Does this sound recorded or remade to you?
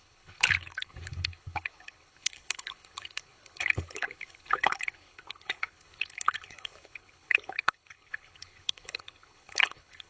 remade